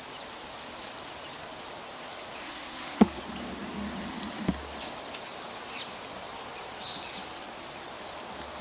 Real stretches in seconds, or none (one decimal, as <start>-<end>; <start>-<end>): 0.0-2.4; 3.2-8.6